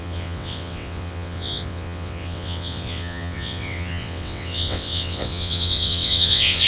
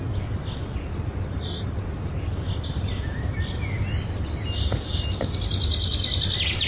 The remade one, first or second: first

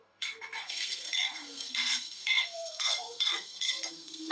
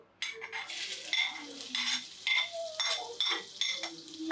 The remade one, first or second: first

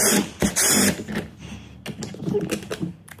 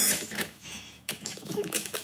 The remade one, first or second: second